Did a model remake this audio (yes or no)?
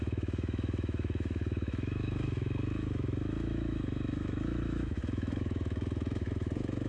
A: yes